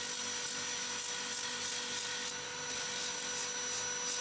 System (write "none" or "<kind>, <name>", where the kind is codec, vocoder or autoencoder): none